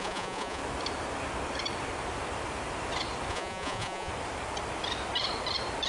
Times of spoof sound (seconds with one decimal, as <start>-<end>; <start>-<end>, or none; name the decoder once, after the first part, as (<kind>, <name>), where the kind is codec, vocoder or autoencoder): 0.0-0.6 (vocoder, Vocos); 3.3-4.1